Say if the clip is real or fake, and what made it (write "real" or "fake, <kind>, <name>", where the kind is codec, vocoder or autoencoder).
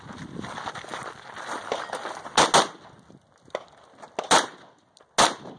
real